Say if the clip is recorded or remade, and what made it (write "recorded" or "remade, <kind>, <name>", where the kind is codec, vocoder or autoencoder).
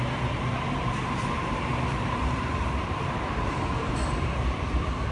remade, vocoder, BigVGAN v2